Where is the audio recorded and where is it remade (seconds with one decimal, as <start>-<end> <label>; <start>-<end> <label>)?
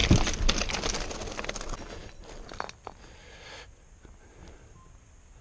0.0-5.4 recorded